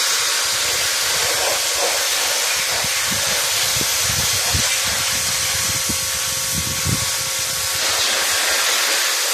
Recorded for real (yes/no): yes